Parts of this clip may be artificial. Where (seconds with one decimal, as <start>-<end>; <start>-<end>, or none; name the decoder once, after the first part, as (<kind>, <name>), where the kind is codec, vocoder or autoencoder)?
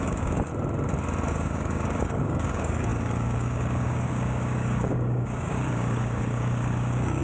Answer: 0.0-0.5 (codec, DAC); 1.3-7.2